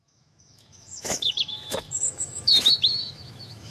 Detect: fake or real fake